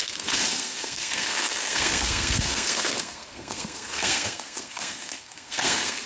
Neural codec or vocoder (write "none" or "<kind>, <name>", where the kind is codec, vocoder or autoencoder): codec, SNAC